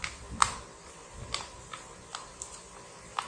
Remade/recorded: recorded